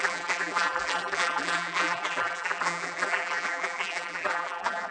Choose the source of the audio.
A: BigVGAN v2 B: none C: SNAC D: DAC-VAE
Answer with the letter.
A